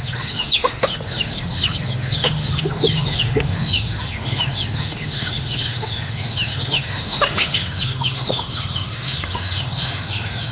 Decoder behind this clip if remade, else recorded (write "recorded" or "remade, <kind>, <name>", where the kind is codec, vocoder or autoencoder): remade, autoencoder, DAC-VAE